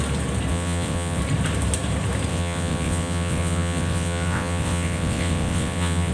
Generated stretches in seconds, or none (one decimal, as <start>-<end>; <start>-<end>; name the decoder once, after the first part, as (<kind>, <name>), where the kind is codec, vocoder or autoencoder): 0.5-1.2 (vocoder, WaveNeXt); 2.3-6.1